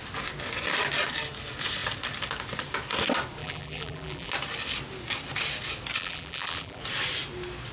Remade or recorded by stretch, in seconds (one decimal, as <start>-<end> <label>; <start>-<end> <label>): 0.0-3.4 recorded; 3.4-4.3 remade; 4.3-6.0 recorded; 6.0-6.8 remade; 6.8-7.7 recorded